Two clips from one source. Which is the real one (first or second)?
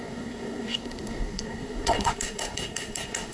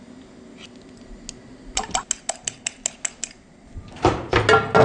second